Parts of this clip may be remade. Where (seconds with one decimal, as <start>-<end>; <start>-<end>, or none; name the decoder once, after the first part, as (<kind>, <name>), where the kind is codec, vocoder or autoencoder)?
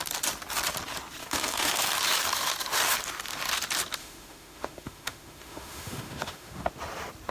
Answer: 1.2-1.9 (autoencoder, DAC-VAE); 4.0-6.7